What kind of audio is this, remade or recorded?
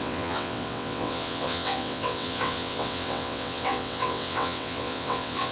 remade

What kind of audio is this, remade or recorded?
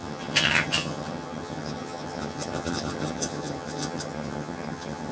remade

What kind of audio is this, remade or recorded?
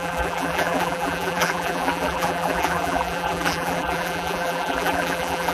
remade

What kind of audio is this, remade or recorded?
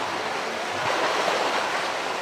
recorded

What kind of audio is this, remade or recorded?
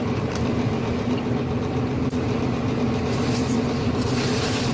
recorded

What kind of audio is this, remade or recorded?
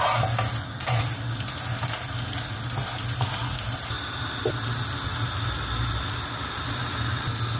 recorded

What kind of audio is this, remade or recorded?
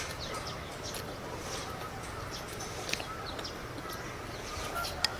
recorded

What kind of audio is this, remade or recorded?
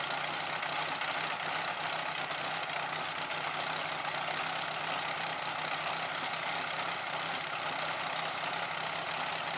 recorded